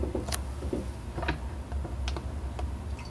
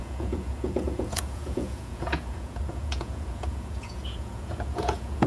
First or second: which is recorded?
first